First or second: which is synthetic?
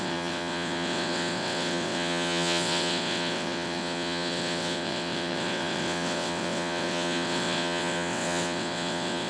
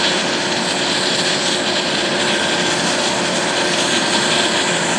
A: first